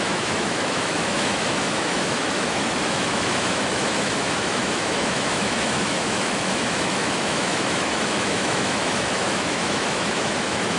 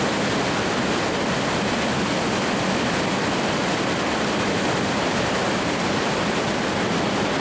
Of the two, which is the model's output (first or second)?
first